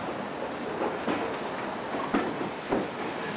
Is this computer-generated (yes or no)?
no